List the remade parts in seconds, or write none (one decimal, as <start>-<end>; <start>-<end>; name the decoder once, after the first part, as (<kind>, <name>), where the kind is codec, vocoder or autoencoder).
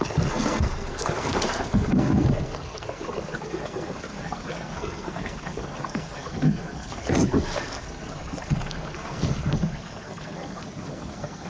0.0-11.5 (codec, SNAC)